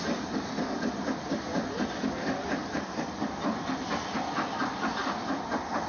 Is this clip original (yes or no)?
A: yes